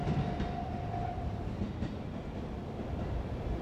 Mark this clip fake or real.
real